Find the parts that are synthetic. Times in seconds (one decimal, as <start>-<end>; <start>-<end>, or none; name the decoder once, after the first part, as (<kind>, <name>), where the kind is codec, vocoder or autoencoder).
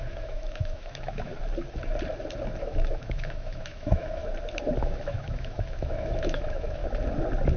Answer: 0.0-1.3 (autoencoder, DAC-VAE); 2.6-4.2; 4.8-6.8